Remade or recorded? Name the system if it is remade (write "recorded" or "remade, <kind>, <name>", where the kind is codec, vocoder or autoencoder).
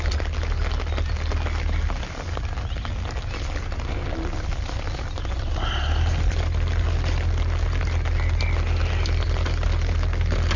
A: recorded